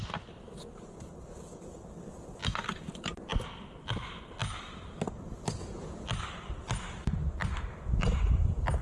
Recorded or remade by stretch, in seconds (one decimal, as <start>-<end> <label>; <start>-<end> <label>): 0.0-8.8 recorded